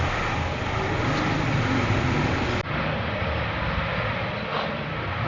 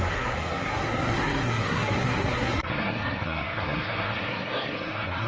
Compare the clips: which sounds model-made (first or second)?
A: second